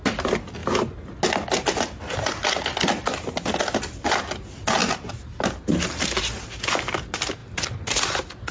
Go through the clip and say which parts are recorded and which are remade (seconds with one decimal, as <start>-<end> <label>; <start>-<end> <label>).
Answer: 0.0-8.5 recorded